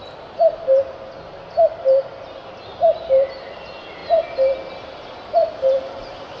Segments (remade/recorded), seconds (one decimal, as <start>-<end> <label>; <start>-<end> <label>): 0.0-6.4 recorded

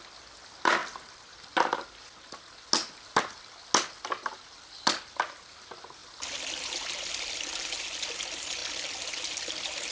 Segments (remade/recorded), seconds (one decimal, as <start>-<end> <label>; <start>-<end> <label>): 0.0-9.9 recorded

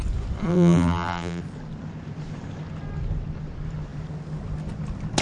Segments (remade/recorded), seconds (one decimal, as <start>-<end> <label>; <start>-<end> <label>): 0.0-0.5 recorded; 0.5-1.4 remade; 1.4-5.2 recorded

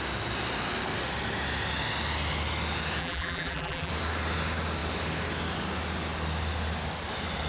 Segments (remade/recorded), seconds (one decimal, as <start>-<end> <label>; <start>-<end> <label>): 0.0-3.0 recorded; 3.0-3.9 remade; 3.9-7.5 recorded

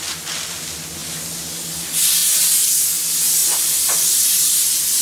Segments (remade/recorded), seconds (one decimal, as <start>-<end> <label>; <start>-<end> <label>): 0.0-2.2 recorded; 2.2-2.9 remade; 2.9-3.4 recorded; 3.4-4.5 remade; 4.5-5.0 recorded